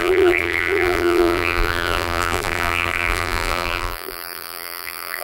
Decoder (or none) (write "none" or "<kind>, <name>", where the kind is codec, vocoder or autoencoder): vocoder, BigVGAN v2